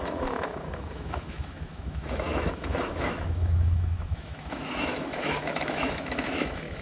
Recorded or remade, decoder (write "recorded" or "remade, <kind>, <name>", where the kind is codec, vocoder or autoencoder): remade, autoencoder, DAC-VAE